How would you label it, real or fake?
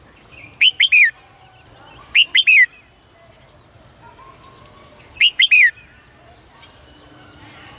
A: real